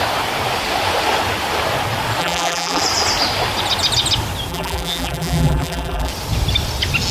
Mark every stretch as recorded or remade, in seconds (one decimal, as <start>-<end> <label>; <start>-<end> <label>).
0.0-2.2 recorded; 2.2-2.8 remade; 2.8-4.5 recorded; 4.5-6.1 remade; 6.1-7.1 recorded